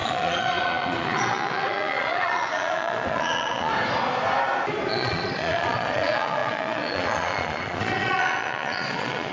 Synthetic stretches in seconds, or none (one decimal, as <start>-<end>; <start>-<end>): 0.0-3.7; 4.9-9.3